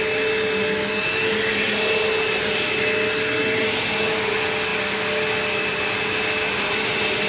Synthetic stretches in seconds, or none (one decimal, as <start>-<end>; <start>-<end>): none